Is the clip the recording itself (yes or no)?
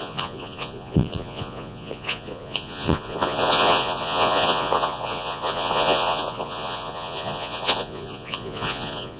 no